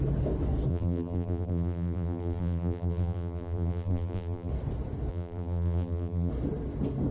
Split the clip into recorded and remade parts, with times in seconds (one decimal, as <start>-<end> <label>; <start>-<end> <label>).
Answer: 0.0-0.7 recorded; 0.7-4.5 remade; 4.5-5.1 recorded; 5.1-6.3 remade; 6.3-7.1 recorded